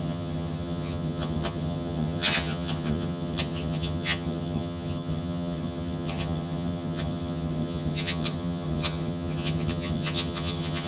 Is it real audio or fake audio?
fake